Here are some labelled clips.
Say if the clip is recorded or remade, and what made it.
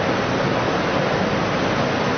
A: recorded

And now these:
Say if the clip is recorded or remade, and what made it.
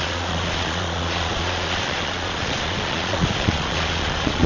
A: remade, vocoder, Vocos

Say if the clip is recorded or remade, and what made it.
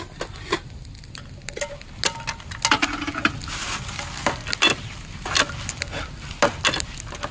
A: recorded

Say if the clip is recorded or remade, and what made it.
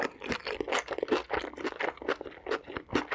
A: recorded